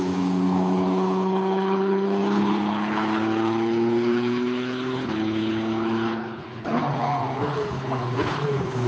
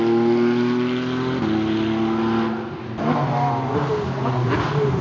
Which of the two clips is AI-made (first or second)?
first